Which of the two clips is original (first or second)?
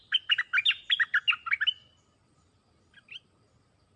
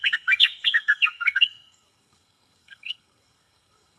first